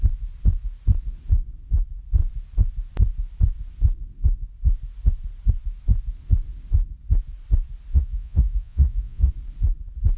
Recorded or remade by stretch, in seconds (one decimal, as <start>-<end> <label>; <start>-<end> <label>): 0.0-7.9 recorded; 7.9-9.3 remade; 9.3-10.2 recorded